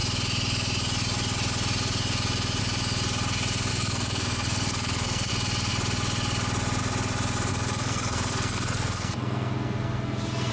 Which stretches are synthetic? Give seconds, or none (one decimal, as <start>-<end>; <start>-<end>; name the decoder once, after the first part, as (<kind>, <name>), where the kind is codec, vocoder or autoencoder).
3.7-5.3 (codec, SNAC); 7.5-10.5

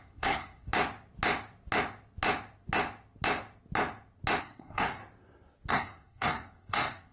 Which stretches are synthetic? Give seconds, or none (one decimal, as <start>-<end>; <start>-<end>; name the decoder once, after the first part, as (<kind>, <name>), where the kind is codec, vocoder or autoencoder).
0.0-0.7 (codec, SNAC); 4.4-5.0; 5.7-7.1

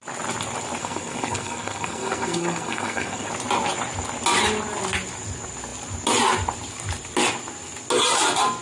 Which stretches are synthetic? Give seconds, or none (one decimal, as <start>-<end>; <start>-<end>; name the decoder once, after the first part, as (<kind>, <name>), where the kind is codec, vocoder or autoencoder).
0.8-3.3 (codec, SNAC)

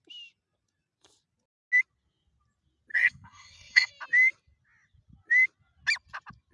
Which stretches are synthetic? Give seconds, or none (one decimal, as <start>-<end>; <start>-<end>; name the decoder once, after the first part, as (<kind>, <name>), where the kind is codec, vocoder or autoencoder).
2.9-3.9 (codec, SNAC)